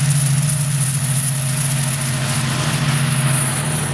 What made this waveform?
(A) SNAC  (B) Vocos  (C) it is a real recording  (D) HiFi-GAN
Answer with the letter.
C